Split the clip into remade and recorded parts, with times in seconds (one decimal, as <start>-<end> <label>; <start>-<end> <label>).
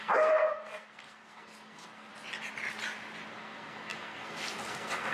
0.0-2.1 remade; 2.1-3.3 recorded; 3.3-5.1 remade